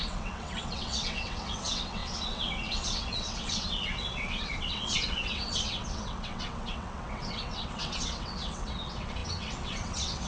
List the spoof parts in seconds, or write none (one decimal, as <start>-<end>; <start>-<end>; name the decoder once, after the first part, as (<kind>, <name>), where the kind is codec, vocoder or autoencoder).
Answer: 0.0-10.3 (vocoder, WaveNeXt)